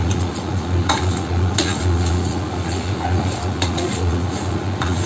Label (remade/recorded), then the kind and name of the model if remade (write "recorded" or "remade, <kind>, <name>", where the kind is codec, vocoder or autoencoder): remade, vocoder, Vocos